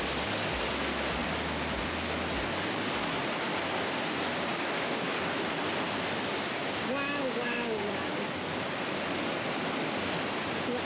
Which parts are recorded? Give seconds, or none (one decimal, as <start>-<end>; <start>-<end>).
0.0-4.5; 5.1-6.3; 8.1-10.8